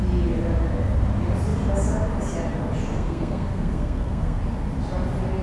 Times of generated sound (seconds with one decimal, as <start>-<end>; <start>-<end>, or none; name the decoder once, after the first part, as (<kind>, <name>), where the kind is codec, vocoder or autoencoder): 2.9-4.4 (codec, SNAC)